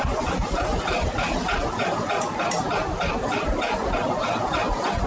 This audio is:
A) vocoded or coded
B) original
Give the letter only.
B